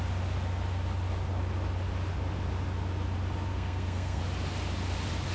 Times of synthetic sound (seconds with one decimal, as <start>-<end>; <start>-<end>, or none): 3.5-4.2